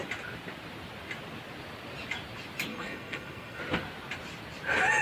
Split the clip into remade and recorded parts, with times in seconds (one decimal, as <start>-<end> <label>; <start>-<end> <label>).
0.0-2.7 recorded; 2.7-3.6 remade; 3.6-5.0 recorded